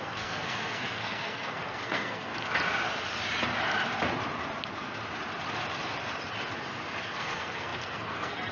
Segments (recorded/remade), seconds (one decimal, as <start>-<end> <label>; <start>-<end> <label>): 0.0-2.3 remade; 2.3-7.0 recorded; 7.0-8.5 remade